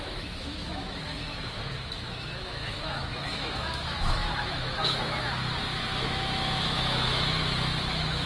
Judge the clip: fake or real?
fake